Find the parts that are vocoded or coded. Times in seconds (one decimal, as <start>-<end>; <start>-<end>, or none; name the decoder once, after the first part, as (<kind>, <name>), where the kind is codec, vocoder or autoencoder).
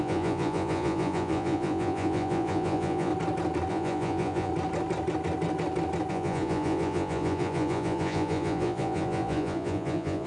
0.0-3.1 (vocoder, Vocos); 3.7-4.5; 6.1-10.3